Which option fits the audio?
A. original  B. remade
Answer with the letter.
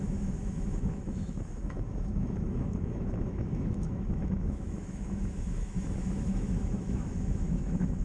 B